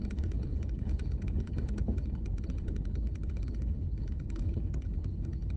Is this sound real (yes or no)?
no